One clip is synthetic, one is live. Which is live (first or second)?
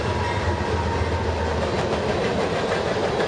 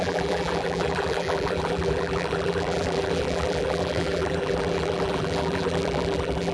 first